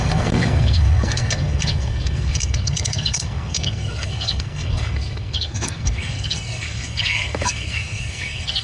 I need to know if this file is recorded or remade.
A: remade